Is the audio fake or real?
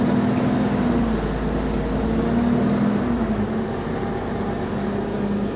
real